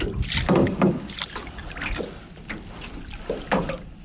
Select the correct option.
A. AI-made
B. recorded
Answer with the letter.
B